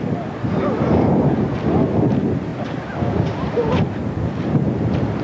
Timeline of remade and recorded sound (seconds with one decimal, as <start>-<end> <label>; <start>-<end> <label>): 0.0-2.5 recorded; 2.5-4.8 remade; 4.8-5.2 recorded